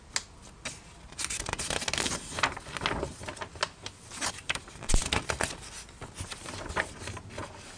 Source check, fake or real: real